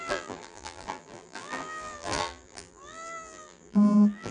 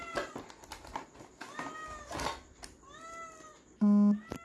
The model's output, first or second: first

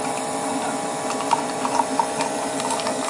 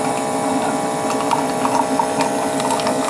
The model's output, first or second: first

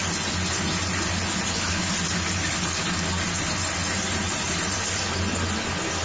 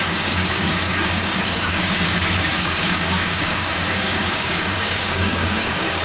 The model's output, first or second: second